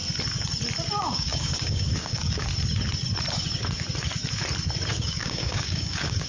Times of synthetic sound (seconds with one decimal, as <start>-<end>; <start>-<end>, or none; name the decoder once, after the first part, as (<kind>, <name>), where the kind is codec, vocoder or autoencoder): 1.0-2.5 (codec, DAC); 4.9-6.3